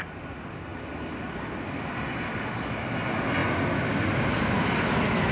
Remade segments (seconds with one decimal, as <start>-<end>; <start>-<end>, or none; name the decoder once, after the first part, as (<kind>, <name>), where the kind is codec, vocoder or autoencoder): none